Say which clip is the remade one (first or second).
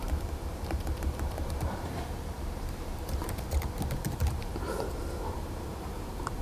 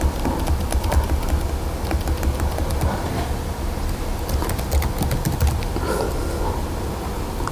first